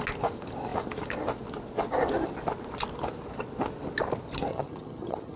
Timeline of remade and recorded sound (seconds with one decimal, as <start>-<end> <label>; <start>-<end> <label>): 0.0-4.5 recorded; 4.5-5.4 remade